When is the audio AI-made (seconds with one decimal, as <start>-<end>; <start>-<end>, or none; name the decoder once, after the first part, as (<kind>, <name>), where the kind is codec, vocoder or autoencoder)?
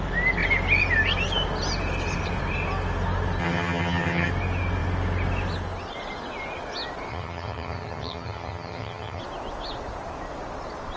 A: 3.4-4.3 (vocoder, HiFi-GAN); 7.1-9.2